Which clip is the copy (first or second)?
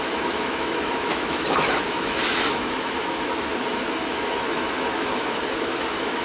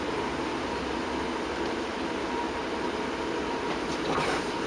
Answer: first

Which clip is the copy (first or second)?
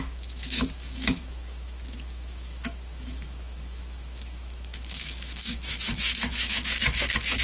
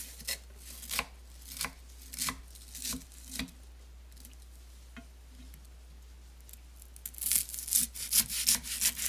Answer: first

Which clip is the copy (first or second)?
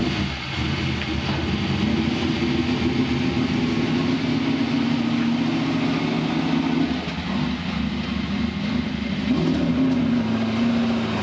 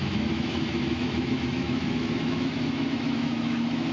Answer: second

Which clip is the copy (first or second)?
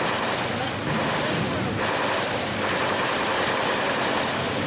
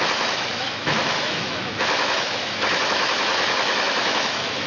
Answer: second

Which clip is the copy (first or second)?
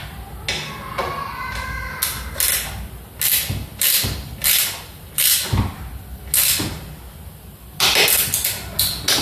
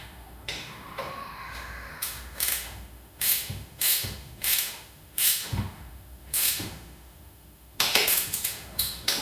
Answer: second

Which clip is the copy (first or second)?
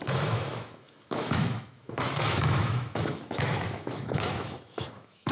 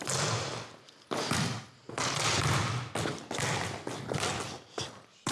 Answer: first